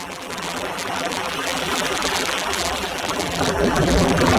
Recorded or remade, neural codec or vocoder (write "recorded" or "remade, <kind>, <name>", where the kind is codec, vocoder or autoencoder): remade, vocoder, BigVGAN v2